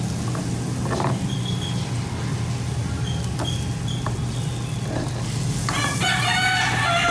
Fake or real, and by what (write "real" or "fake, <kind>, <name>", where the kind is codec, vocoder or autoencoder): real